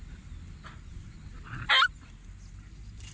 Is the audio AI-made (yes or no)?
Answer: no